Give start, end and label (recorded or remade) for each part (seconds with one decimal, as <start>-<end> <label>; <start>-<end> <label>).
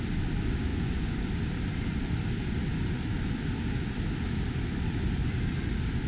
0.0-0.7 recorded; 0.7-1.3 remade; 1.3-6.1 recorded